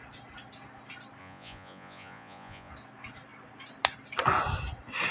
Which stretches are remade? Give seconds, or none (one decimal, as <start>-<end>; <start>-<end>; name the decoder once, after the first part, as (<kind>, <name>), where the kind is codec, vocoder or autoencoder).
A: 1.2-2.7 (vocoder, Vocos)